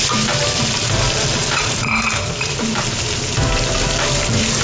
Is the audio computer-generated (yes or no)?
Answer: yes